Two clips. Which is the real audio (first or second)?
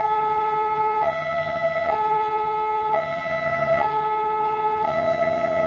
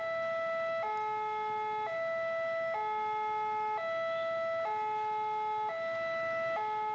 second